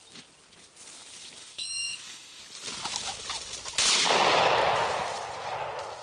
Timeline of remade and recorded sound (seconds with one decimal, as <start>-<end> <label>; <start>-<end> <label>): 0.0-1.4 recorded; 1.4-2.4 remade; 2.4-6.0 recorded